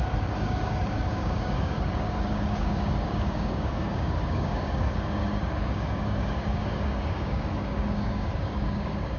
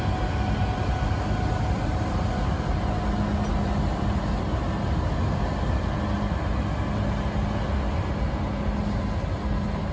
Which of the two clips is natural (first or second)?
second